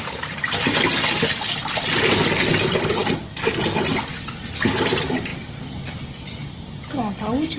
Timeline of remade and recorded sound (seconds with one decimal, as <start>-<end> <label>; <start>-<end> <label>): 0.0-7.6 recorded